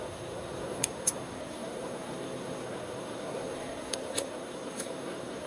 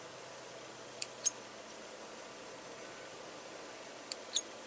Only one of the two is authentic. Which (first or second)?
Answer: second